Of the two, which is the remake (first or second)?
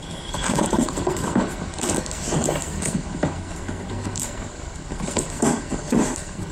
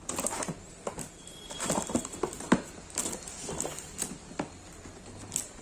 first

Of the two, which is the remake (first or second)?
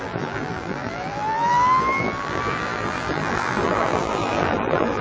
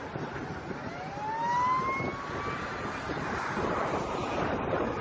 first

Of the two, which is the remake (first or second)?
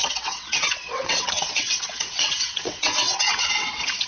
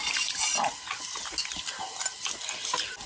first